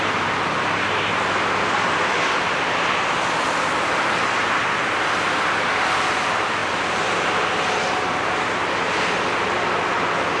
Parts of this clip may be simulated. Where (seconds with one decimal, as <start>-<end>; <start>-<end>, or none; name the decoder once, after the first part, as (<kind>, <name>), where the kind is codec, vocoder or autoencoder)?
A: 6.6-7.1 (vocoder, BigVGAN v2)